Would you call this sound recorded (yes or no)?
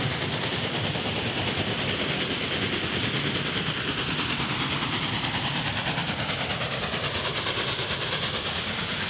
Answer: no